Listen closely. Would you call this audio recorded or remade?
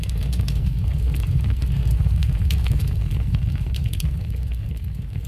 remade